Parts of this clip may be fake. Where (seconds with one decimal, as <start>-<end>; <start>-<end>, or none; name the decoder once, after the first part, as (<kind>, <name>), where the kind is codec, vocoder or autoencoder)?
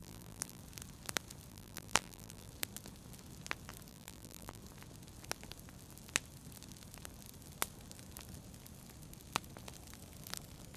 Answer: 0.0-0.6 (vocoder, BigVGAN v2); 1.5-2.5; 3.9-4.6